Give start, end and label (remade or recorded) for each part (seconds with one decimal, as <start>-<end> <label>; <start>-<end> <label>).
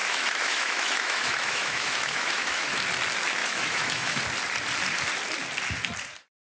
0.0-2.8 remade; 2.8-3.4 recorded; 3.4-4.2 remade; 4.2-6.4 recorded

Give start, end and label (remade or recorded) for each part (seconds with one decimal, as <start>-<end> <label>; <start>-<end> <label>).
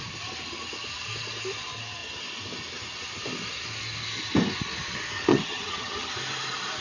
0.0-5.3 recorded; 5.3-6.1 remade; 6.1-6.8 recorded